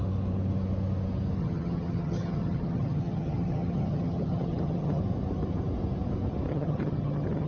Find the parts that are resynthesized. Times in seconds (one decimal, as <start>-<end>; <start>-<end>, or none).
1.4-5.0; 6.5-7.5